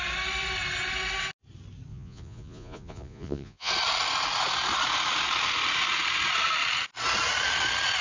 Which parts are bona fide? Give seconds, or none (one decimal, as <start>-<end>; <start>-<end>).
0.0-1.9; 3.7-8.0